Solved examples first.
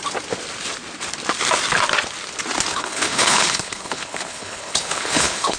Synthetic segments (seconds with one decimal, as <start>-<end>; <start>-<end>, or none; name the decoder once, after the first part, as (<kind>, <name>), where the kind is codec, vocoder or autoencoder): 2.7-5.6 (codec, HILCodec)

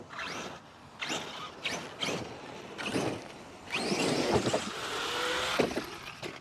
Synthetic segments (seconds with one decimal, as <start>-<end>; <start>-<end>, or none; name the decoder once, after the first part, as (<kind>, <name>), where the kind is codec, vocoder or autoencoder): none

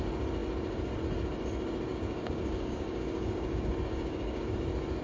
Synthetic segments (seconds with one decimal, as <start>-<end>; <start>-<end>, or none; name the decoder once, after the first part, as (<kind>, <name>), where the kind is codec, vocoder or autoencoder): 1.9-4.5 (codec, DAC)